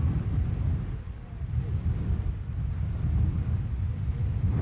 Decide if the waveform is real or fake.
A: real